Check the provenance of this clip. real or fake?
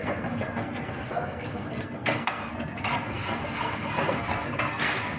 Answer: fake